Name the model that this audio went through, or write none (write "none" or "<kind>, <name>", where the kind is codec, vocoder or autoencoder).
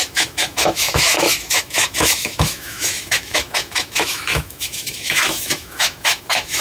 autoencoder, DAC-VAE